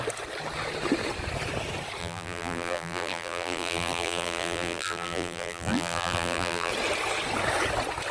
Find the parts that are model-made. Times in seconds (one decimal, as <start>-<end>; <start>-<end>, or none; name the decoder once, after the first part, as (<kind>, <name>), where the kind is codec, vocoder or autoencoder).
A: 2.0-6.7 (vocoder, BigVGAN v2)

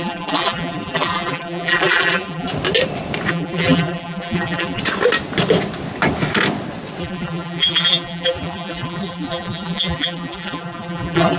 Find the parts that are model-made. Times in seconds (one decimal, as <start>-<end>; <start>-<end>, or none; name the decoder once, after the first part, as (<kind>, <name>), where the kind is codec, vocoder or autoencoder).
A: 0.0-2.5 (vocoder, BigVGAN v2); 3.3-4.8; 7.0-11.4

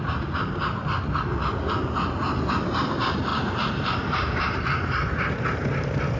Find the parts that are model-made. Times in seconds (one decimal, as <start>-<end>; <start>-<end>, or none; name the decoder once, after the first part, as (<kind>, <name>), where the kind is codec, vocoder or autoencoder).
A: 0.0-0.8 (vocoder, BigVGAN v2); 2.5-6.2